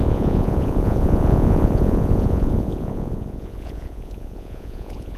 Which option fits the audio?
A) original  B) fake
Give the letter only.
B